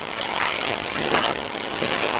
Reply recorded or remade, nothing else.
remade